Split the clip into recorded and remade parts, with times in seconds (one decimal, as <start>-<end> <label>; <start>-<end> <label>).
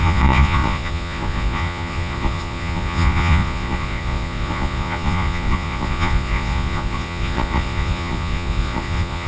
0.0-9.3 remade